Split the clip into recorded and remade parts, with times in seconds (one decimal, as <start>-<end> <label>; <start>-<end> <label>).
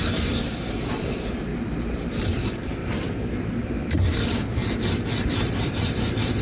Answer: 0.0-1.5 remade; 1.5-2.1 recorded; 2.1-6.4 remade